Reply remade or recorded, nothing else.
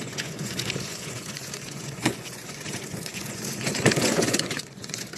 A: remade